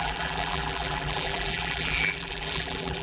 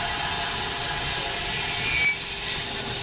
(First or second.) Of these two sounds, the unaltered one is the second